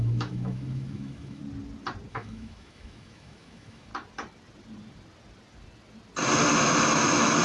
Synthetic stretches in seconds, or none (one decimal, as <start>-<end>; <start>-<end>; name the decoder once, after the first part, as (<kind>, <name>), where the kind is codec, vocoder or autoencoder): 0.0-1.4 (autoencoder, DAC-VAE); 2.1-3.9; 7.0-7.4